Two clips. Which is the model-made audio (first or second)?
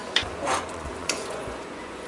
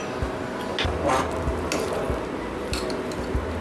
first